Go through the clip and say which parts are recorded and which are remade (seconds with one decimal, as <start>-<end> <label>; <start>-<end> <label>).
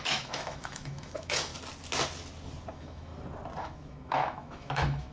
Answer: 0.0-1.5 remade; 1.5-2.7 recorded; 2.7-3.1 remade; 3.1-3.6 recorded; 3.6-5.1 remade